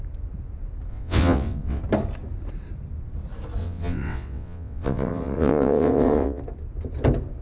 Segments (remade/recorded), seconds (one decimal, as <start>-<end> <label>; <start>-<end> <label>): 0.0-0.9 recorded; 0.9-1.8 remade; 1.8-3.6 recorded; 3.6-6.4 remade; 6.4-7.4 recorded